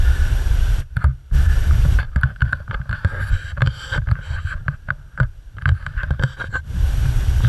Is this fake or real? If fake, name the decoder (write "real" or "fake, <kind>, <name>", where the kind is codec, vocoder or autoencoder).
fake, vocoder, BigVGAN v2